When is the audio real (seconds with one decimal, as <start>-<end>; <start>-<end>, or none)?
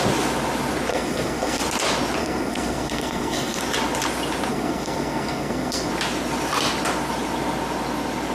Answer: 0.0-0.9; 1.6-2.2; 3.6-4.5; 5.9-8.3